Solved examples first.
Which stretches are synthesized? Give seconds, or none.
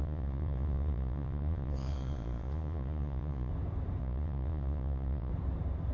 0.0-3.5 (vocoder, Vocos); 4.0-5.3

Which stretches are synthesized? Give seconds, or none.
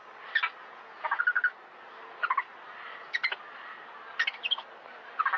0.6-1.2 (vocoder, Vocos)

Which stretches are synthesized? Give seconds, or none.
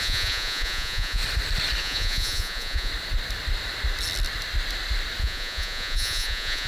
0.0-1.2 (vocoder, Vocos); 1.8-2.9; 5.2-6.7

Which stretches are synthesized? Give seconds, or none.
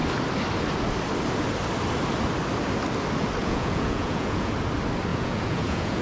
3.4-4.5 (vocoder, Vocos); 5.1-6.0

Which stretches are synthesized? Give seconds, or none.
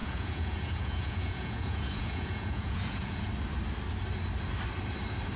0.0-3.2 (vocoder, Vocos)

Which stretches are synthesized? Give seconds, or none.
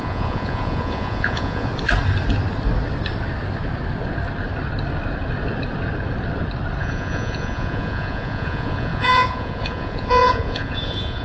0.0-1.7 (vocoder, Vocos); 6.8-11.2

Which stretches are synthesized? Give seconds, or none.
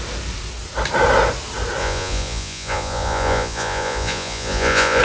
1.8-5.0 (vocoder, Vocos)